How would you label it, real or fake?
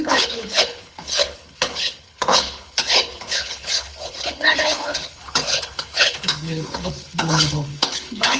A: fake